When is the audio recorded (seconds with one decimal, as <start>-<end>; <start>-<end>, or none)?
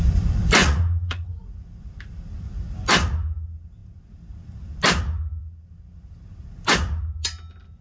0.0-0.6; 1.6-7.8